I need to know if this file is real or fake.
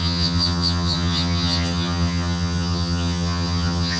fake